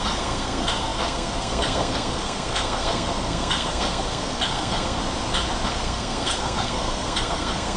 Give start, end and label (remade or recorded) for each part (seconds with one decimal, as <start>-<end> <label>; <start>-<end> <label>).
0.0-5.0 remade; 5.0-5.7 recorded; 5.7-7.8 remade